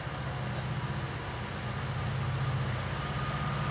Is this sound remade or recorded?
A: recorded